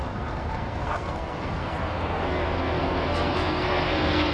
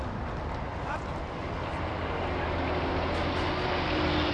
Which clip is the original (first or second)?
second